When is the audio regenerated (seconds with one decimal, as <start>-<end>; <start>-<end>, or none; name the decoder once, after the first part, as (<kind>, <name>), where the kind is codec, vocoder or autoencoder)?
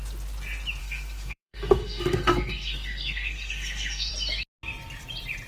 0.8-4.1 (codec, SNAC)